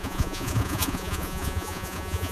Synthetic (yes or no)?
yes